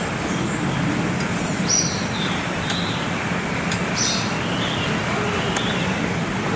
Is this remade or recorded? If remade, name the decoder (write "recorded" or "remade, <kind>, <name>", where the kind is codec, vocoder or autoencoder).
recorded